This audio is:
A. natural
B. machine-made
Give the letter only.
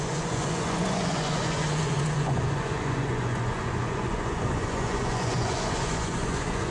B